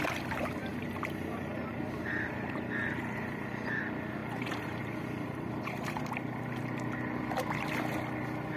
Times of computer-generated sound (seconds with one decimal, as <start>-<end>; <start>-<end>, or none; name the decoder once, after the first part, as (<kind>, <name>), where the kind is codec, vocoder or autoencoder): 0.6-3.8 (vocoder, BigVGAN v2); 4.2-6.0